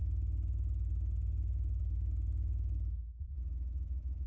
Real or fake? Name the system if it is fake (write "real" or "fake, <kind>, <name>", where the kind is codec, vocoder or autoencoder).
real